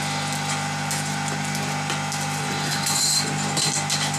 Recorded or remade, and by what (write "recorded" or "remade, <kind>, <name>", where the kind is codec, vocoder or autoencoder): recorded